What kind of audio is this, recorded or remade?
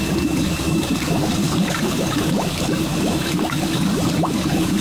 remade